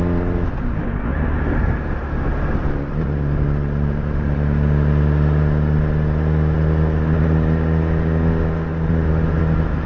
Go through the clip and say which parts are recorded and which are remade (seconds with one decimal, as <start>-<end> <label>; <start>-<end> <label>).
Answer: 0.0-8.7 recorded; 8.7-9.4 remade; 9.4-9.9 recorded